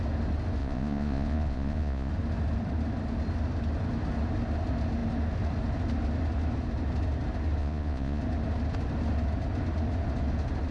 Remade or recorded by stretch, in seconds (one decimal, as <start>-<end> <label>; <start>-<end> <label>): 0.0-0.6 recorded; 0.6-2.1 remade; 2.1-7.6 recorded; 7.6-8.2 remade; 8.2-10.7 recorded

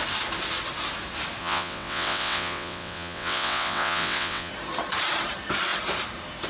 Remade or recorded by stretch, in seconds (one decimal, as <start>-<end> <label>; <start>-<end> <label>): 0.0-1.4 recorded; 1.4-4.5 remade; 4.5-6.5 recorded

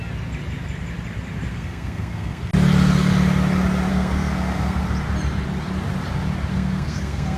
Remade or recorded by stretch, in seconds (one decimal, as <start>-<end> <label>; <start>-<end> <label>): 0.0-1.5 recorded; 1.5-2.4 remade; 2.4-3.9 recorded; 3.9-4.8 remade; 4.8-6.5 recorded; 6.5-7.4 remade

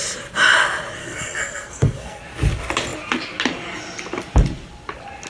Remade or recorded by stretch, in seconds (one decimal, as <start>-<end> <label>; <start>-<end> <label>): 0.0-1.0 recorded; 1.0-2.2 remade; 2.2-5.3 recorded

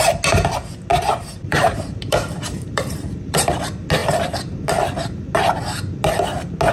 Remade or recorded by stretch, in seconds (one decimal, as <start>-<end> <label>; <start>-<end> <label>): 0.0-0.9 recorded; 0.9-3.6 remade; 3.6-6.7 recorded

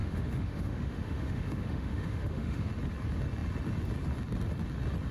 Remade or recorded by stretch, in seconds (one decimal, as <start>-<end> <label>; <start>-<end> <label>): 0.0-2.7 remade; 2.7-5.1 recorded

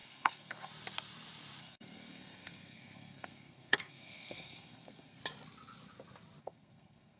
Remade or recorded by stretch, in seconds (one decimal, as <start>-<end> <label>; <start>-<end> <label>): 0.0-0.7 remade; 0.7-1.6 recorded; 1.6-5.2 remade; 5.2-6.4 recorded; 6.4-7.2 remade

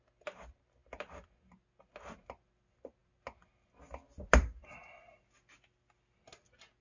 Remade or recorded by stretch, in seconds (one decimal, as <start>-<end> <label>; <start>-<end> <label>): 0.0-6.8 recorded